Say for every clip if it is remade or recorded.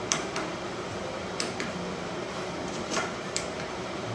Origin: remade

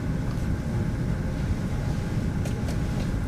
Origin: recorded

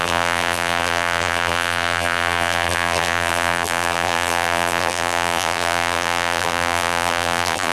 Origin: remade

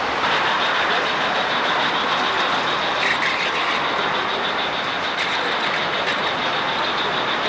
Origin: recorded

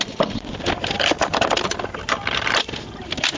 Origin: recorded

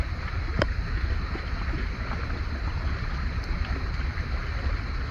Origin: recorded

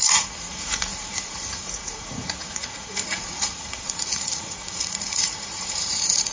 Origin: remade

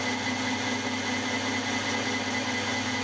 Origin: recorded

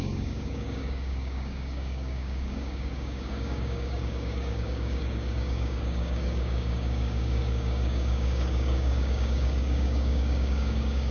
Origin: remade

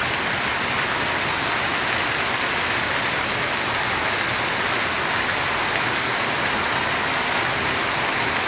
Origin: recorded